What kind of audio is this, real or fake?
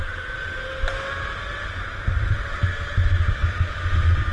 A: real